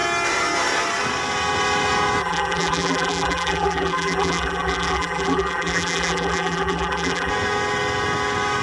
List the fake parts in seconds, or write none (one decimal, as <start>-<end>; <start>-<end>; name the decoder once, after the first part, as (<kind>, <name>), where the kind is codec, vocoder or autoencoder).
2.2-7.3 (vocoder, BigVGAN v2)